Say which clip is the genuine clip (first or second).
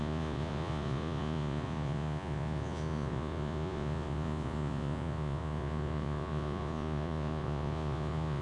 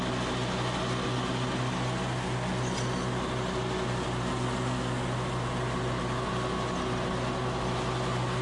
second